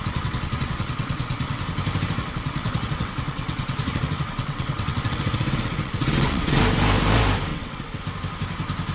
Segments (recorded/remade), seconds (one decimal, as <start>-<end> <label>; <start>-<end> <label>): 0.0-1.6 remade; 1.6-2.2 recorded; 2.2-6.6 remade; 6.6-7.5 recorded; 7.5-8.0 remade; 8.0-8.9 recorded